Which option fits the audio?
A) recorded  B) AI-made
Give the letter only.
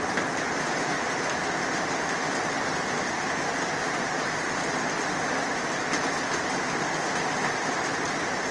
A